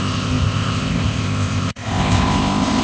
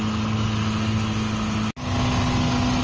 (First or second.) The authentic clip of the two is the second